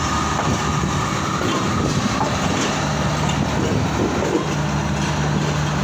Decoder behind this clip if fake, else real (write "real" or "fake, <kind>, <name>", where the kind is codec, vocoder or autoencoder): real